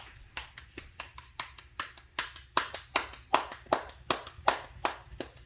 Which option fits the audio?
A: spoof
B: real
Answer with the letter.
B